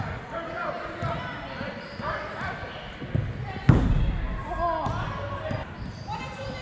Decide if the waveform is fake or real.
real